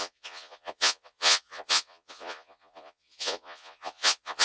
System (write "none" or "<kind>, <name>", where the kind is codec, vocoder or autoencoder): vocoder, Vocos